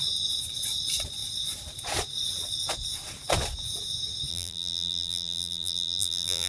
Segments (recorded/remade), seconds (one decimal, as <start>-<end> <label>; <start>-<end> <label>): 0.0-4.3 recorded; 4.3-6.5 remade